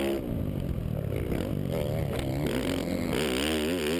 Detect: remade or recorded recorded